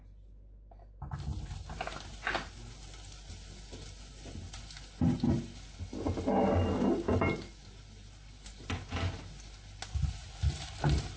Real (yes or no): yes